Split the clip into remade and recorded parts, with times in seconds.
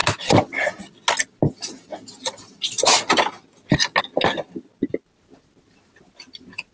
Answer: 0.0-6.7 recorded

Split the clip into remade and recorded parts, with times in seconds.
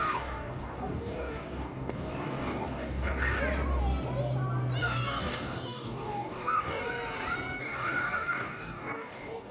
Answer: 0.0-3.4 remade; 3.4-4.8 recorded; 4.8-6.8 remade; 6.8-7.6 recorded; 7.6-9.5 remade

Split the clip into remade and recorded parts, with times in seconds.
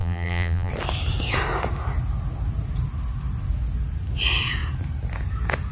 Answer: 0.0-0.7 remade; 0.7-5.7 recorded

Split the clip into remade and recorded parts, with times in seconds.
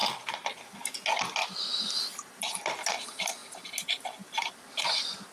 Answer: 0.0-0.5 remade; 0.5-1.7 recorded; 1.7-2.5 remade; 2.5-5.3 recorded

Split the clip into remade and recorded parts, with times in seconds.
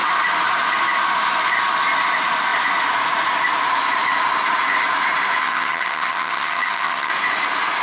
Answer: 0.0-5.4 recorded; 5.4-7.1 remade; 7.1-7.8 recorded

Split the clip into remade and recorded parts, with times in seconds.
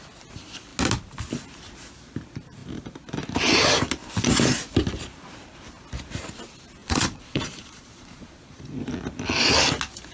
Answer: 0.0-6.8 recorded; 6.8-8.9 remade; 8.9-10.1 recorded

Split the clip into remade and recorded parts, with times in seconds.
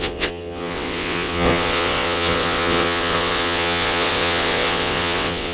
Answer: 0.0-5.5 remade